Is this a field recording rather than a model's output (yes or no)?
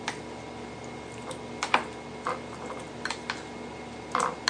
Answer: yes